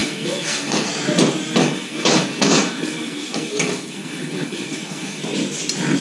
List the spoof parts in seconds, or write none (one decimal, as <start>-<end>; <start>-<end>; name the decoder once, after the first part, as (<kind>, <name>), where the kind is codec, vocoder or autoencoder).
0.0-0.9 (codec, SNAC); 1.6-5.2